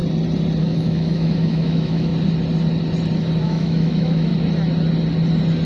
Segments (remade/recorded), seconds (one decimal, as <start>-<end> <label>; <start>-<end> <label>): 0.0-0.6 recorded; 0.6-2.1 remade; 2.1-3.4 recorded; 3.4-4.3 remade; 4.3-5.7 recorded